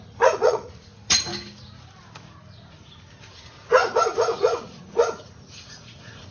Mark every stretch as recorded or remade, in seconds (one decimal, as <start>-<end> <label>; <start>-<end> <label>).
0.0-1.3 remade; 1.3-3.3 recorded; 3.3-6.3 remade